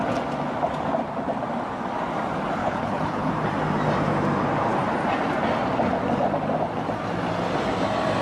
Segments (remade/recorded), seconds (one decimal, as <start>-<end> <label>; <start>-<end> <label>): 0.0-2.6 recorded; 2.6-3.3 remade; 3.3-8.2 recorded